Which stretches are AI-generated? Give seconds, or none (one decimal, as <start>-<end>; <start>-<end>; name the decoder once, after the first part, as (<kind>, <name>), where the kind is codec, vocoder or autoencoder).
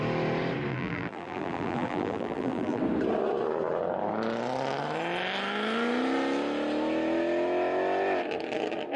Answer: 0.7-2.8 (vocoder, BigVGAN v2)